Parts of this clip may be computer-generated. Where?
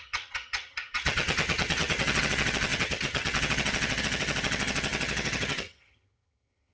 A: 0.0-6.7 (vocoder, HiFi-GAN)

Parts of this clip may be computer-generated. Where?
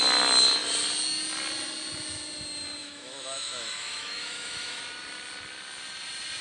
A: 2.8-4.8 (autoencoder, DAC-VAE)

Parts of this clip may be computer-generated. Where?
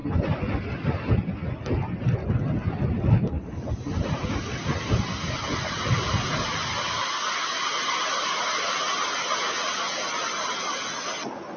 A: none